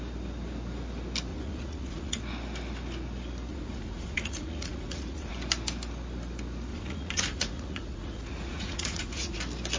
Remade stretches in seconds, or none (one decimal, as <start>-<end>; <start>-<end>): 1.3-2.2; 3.5-5.3; 6.7-9.4